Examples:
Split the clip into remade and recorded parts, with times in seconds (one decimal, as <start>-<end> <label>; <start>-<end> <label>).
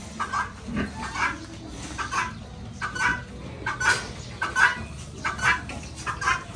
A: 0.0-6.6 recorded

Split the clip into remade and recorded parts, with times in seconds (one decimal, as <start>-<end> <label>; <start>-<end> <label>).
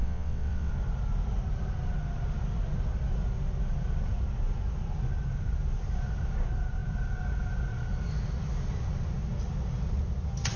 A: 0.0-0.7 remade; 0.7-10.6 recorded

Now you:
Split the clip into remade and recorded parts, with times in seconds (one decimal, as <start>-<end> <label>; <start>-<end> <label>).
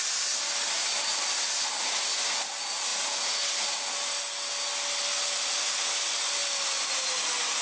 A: 0.0-7.6 recorded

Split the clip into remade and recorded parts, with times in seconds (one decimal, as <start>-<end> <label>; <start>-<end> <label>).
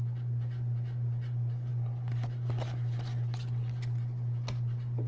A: 0.0-5.1 recorded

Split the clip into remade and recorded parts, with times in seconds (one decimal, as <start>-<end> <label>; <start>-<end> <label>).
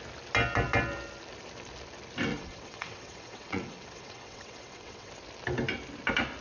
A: 0.0-2.3 recorded; 2.3-5.1 remade; 5.1-6.4 recorded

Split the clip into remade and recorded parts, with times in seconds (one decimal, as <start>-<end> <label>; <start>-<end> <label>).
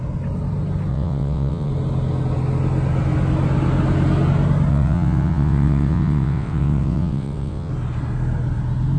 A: 0.0-0.9 recorded; 0.9-1.7 remade; 1.7-4.7 recorded; 4.7-7.7 remade; 7.7-9.0 recorded